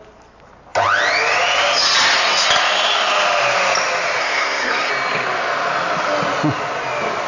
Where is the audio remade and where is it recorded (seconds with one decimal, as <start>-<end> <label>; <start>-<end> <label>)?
0.0-4.2 recorded; 4.2-4.9 remade; 4.9-7.3 recorded